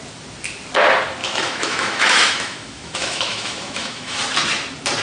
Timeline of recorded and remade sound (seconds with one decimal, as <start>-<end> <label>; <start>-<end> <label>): 0.0-1.2 recorded; 1.2-4.2 remade; 4.2-5.0 recorded